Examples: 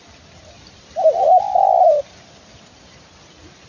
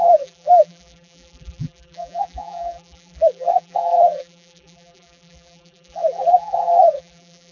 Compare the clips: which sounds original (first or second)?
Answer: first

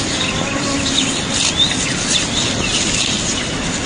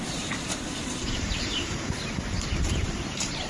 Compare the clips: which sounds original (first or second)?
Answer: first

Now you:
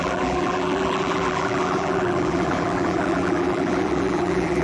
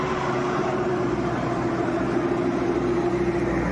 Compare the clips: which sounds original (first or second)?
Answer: second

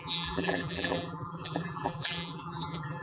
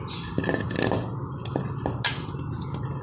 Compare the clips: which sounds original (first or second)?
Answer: second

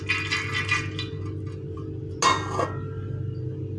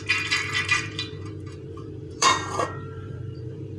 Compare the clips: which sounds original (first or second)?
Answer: first